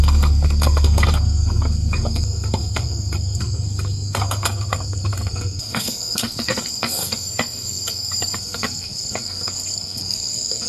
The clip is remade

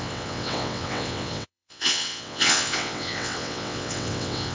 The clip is remade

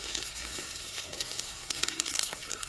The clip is remade